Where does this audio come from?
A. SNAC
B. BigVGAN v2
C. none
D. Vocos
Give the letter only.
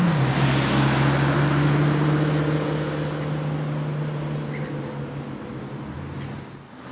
C